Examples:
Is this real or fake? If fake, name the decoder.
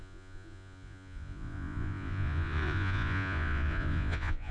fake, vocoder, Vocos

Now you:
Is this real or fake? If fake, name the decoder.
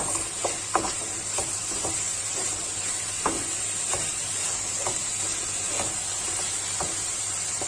real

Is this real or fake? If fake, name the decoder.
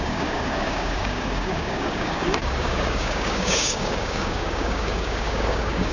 fake, codec, DAC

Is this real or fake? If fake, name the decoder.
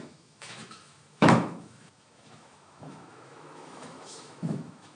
fake, autoencoder, DAC-VAE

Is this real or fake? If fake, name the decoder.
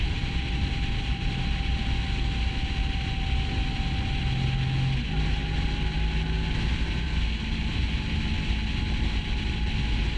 real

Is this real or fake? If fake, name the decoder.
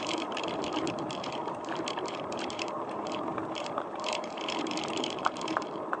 fake, vocoder, BigVGAN v2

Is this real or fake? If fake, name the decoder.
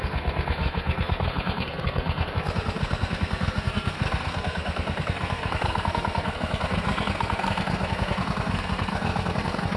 fake, codec, SNAC